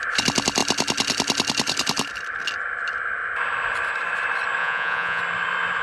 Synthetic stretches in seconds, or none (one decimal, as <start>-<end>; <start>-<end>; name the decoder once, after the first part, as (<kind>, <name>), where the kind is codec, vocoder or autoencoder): 4.6-5.2 (vocoder, Vocos)